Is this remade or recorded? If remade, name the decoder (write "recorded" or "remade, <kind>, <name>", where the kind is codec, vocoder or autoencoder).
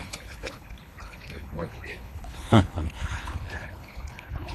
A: remade, codec, HILCodec